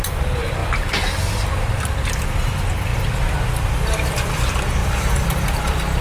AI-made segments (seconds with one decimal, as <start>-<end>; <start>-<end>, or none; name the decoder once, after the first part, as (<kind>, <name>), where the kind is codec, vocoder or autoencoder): 4.8-6.0 (vocoder, BigVGAN v2)